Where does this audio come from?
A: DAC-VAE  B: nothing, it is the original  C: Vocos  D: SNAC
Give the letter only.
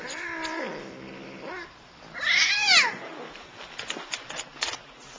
B